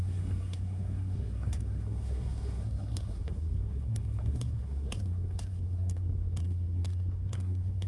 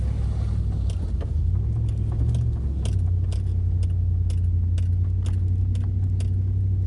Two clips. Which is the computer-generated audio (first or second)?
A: first